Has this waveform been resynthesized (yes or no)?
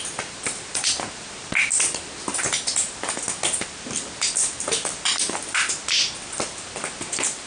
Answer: no